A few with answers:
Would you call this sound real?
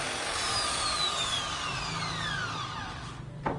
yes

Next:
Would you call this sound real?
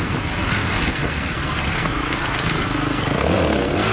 no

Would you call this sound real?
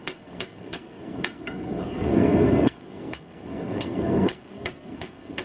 no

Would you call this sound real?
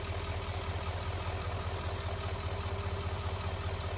yes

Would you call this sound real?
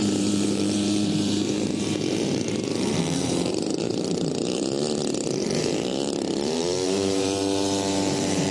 no